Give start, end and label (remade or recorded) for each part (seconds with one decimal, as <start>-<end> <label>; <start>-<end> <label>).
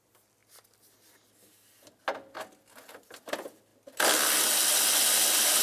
0.0-5.6 recorded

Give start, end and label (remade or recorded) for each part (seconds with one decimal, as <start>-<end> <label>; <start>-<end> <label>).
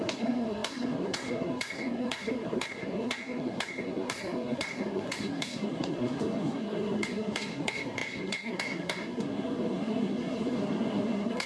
0.0-11.5 remade